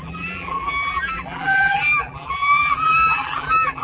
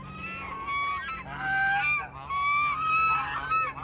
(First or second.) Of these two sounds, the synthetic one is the first